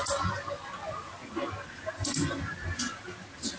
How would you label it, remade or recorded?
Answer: recorded